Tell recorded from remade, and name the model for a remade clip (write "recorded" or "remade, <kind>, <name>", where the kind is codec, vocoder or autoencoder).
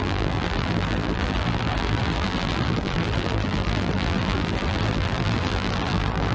remade, vocoder, BigVGAN v2